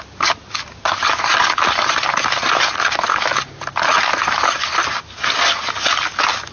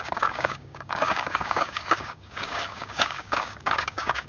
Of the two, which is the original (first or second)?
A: first